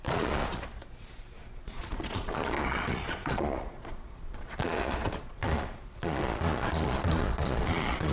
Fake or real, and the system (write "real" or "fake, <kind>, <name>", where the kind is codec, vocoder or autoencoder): fake, vocoder, Vocos